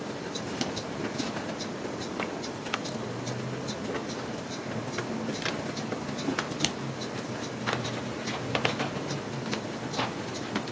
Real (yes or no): yes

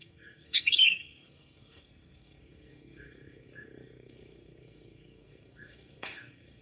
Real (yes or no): no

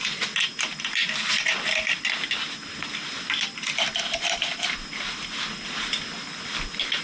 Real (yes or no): yes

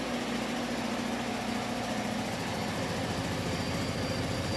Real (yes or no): yes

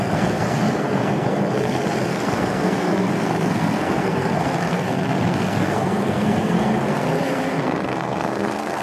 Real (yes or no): no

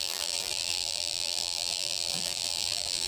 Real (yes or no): no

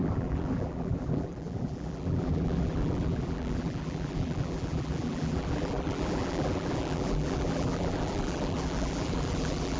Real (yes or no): no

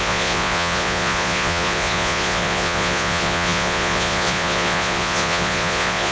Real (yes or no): no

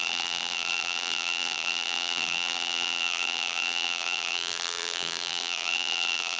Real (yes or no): no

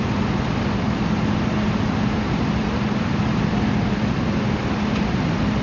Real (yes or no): yes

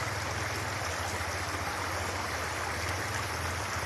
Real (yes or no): yes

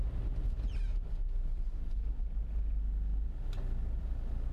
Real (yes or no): yes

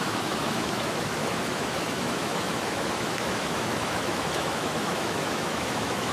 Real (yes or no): no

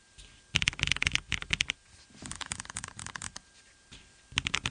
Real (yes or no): yes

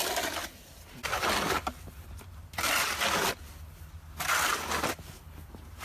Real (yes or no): yes